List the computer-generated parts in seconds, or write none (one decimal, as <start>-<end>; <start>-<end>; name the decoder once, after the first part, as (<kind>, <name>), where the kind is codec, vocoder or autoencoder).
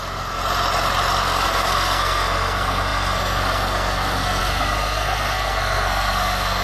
0.0-0.4 (codec, SNAC); 1.2-6.6